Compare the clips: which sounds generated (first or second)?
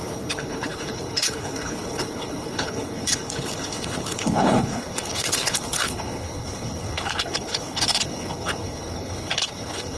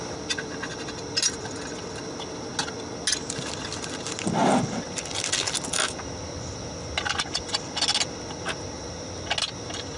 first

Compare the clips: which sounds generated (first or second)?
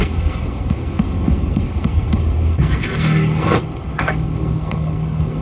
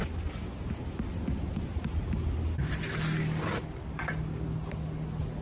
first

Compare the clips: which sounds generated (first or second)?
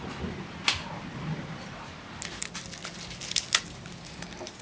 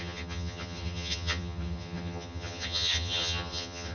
second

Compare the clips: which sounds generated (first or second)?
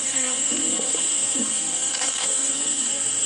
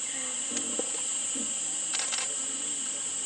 first